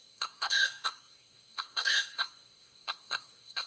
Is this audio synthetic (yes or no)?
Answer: yes